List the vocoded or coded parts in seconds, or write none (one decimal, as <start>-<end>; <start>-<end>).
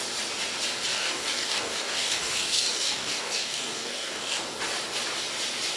0.9-4.4